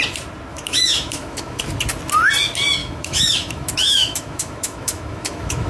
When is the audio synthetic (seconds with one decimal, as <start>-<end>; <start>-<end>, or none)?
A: 0.5-1.6; 2.8-5.7